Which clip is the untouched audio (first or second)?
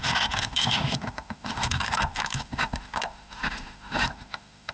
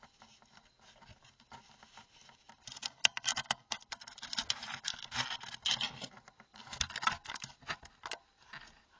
second